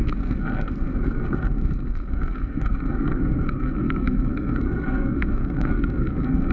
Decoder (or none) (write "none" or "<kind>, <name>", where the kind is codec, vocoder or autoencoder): codec, SNAC